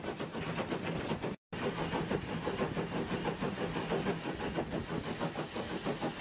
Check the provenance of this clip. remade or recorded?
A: recorded